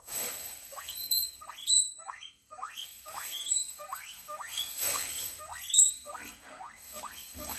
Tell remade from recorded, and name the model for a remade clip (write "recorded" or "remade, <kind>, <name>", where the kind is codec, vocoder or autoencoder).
remade, codec, SNAC